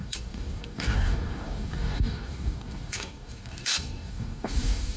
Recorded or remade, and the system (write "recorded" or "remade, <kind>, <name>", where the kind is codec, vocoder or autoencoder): remade, codec, DAC